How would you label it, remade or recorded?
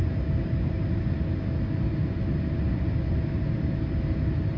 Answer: recorded